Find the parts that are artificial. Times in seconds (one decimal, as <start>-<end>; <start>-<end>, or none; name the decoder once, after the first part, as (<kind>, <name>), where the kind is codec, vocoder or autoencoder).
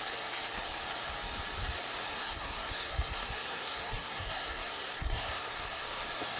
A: 2.1-5.8 (codec, SNAC)